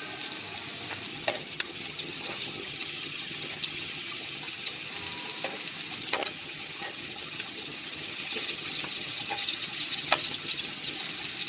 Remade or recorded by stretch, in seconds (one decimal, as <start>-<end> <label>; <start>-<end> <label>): 0.0-1.1 recorded; 1.1-4.9 remade; 4.9-6.0 recorded; 6.0-11.0 remade; 11.0-11.5 recorded